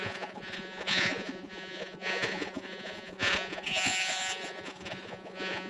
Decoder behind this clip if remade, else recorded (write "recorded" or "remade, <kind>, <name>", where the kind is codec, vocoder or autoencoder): remade, vocoder, Vocos